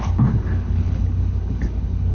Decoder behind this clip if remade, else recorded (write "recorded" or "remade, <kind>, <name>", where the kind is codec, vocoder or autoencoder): remade, codec, HILCodec